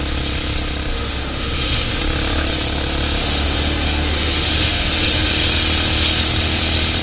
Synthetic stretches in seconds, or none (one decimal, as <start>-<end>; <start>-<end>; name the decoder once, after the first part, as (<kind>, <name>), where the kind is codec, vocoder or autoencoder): 0.9-2.0 (autoencoder, DAC-VAE); 3.2-5.3